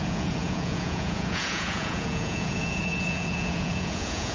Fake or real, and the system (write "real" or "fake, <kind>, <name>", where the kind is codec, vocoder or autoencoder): fake, vocoder, Vocos